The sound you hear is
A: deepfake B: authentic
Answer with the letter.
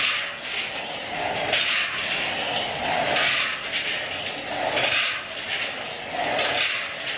B